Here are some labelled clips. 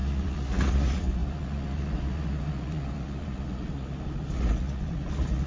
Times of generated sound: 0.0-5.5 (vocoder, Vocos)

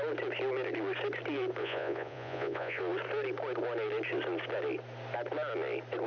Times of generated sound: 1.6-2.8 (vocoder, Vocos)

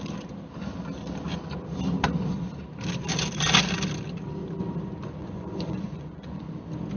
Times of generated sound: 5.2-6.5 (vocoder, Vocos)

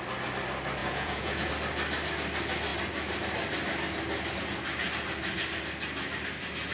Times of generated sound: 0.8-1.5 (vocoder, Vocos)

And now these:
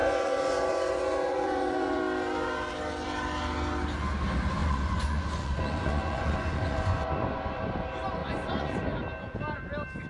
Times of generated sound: 0.0-2.0 (vocoder, Vocos); 4.6-7.6; 8.2-8.8